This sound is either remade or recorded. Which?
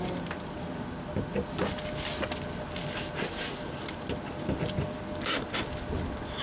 recorded